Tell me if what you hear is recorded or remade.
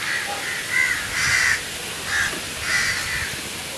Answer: recorded